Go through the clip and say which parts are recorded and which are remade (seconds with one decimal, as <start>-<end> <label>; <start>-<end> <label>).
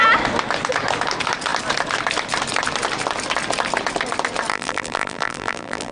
0.0-4.5 recorded; 4.5-5.9 remade